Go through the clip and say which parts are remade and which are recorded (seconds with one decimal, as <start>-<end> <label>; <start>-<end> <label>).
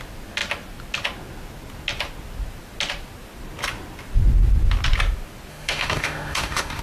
0.0-5.5 recorded; 5.5-6.8 remade